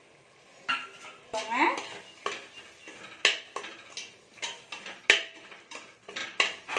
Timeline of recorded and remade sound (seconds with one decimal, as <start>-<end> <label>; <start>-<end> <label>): 0.0-6.8 recorded